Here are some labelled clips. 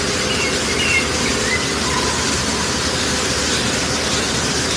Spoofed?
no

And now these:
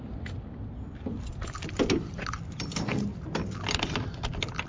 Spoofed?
no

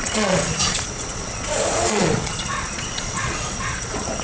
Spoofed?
yes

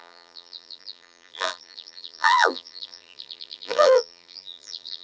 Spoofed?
yes